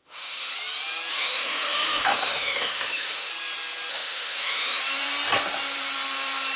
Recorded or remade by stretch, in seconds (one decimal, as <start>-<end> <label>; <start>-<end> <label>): 0.0-0.5 remade; 0.5-1.1 recorded; 1.1-3.3 remade; 3.3-3.9 recorded; 3.9-4.8 remade; 4.8-6.6 recorded